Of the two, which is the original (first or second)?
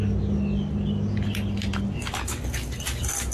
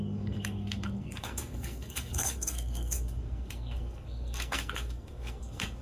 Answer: first